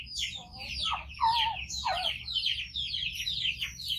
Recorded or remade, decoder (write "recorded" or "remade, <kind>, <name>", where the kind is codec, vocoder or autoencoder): remade, vocoder, BigVGAN v2